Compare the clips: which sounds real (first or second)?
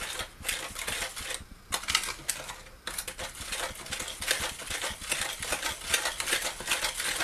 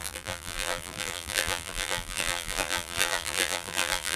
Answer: first